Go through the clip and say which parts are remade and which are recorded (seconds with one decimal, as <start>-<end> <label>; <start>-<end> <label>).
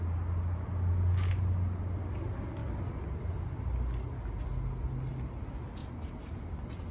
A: 0.0-5.8 recorded; 5.8-6.4 remade; 6.4-6.9 recorded